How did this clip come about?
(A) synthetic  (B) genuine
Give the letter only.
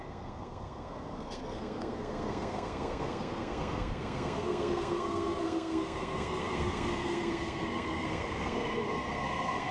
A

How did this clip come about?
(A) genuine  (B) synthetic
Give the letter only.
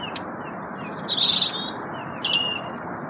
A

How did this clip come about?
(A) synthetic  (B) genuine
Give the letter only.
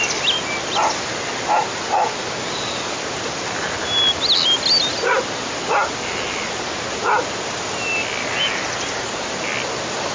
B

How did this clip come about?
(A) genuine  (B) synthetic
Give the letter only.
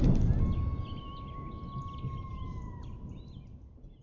A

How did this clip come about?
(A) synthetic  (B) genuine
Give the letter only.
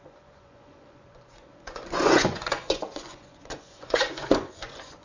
A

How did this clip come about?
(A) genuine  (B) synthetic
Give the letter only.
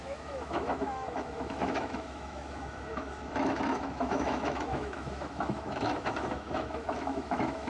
B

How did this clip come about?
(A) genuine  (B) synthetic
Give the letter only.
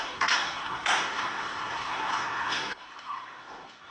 B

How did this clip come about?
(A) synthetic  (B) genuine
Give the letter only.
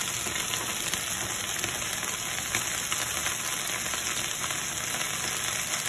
B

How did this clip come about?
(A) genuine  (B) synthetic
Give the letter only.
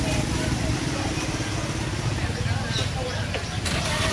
A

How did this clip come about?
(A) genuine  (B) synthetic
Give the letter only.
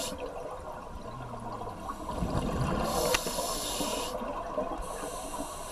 A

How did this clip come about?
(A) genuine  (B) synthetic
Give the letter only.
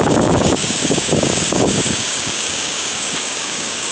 B